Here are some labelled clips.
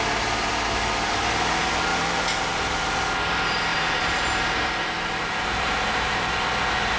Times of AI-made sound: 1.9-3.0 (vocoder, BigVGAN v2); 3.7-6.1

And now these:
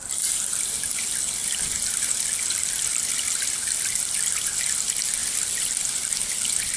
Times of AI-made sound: 1.4-2.3 (vocoder, BigVGAN v2); 2.9-4.6; 5.2-6.1

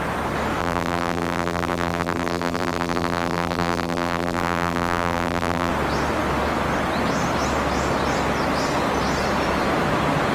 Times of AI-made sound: 0.6-5.7 (vocoder, BigVGAN v2)

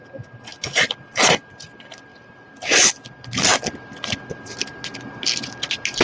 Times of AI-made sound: 2.1-3.0 (vocoder, BigVGAN v2)

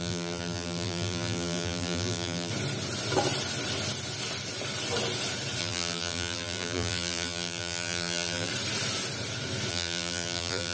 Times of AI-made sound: 0.0-2.5 (vocoder, BigVGAN v2); 5.6-8.5; 9.7-10.7

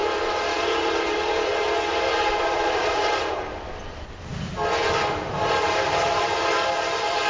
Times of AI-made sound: 0.6-1.5 (vocoder, BigVGAN v2); 2.1-4.3; 5.3-7.3

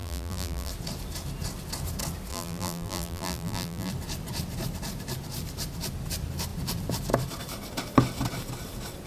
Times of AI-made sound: 0.0-0.7 (vocoder, BigVGAN v2); 2.3-3.9

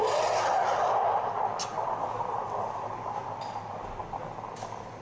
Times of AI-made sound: 1.7-5.0 (vocoder, BigVGAN v2)